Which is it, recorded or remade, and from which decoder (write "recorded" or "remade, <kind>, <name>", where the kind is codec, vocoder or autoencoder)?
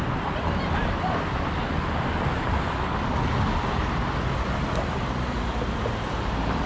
recorded